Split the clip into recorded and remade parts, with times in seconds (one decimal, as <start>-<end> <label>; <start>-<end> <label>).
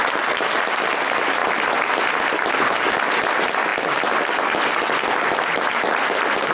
0.0-1.4 remade; 1.4-2.1 recorded; 2.1-6.5 remade